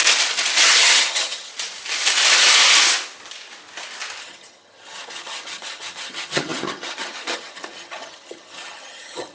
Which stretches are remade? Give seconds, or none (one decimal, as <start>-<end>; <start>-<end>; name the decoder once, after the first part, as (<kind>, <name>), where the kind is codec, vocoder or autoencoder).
0.6-1.5 (vocoder, HiFi-GAN); 4.2-9.3